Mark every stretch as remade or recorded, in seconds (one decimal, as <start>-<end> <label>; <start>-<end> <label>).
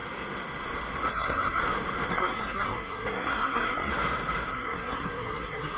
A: 0.0-1.1 recorded; 1.1-1.6 remade; 1.6-2.1 recorded; 2.1-3.9 remade; 3.9-4.5 recorded; 4.5-5.8 remade